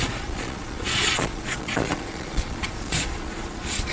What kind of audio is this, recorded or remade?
remade